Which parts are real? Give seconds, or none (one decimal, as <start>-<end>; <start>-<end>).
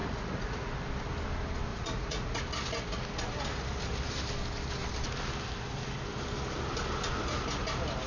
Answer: 0.7-1.7; 2.4-8.1